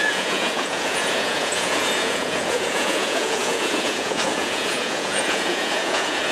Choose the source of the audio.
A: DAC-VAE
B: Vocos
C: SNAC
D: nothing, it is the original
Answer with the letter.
B